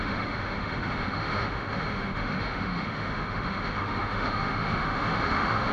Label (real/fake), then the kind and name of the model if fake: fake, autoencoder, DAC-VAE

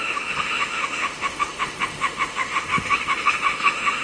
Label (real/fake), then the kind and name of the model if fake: fake, autoencoder, DAC-VAE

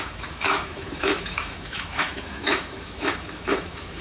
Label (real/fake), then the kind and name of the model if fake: fake, autoencoder, DAC-VAE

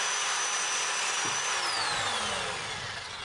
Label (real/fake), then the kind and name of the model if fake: real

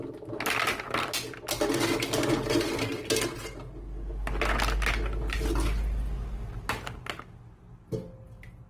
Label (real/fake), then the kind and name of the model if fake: real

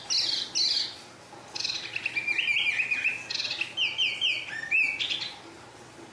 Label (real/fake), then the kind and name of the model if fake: real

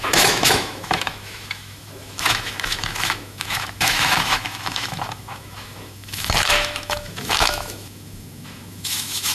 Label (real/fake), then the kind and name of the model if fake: fake, autoencoder, DAC-VAE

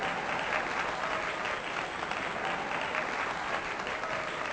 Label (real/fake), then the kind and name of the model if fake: real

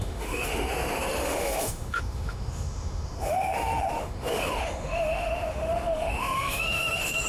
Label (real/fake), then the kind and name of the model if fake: fake, autoencoder, DAC-VAE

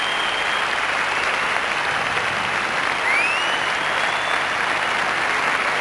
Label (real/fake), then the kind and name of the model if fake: real